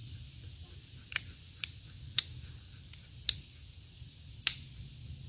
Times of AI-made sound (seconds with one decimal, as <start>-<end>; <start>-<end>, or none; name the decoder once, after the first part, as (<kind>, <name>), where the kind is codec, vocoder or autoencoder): none

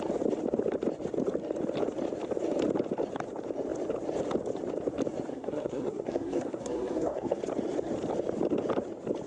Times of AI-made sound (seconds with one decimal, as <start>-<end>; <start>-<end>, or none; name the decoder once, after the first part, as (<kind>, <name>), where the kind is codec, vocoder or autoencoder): 5.3-7.4 (codec, SNAC)

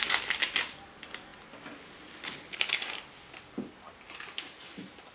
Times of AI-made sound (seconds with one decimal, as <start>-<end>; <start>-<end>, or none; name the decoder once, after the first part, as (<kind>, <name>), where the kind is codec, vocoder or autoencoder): none

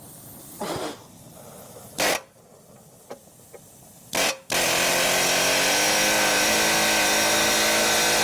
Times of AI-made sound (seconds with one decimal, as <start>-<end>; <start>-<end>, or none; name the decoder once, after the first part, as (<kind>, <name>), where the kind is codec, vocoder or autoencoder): none

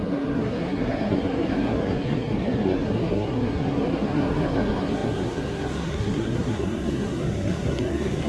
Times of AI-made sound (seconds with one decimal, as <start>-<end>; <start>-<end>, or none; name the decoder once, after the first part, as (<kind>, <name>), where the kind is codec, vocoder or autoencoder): 0.0-8.3 (codec, SNAC)

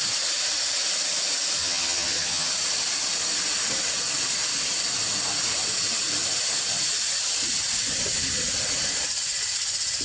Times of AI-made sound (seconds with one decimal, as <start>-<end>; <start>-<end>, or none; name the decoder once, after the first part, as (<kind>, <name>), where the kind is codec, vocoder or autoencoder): 1.6-2.5 (vocoder, HiFi-GAN)